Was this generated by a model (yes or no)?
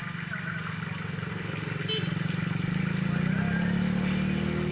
no